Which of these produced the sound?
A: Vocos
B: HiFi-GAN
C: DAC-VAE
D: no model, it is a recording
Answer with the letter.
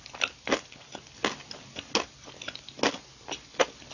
D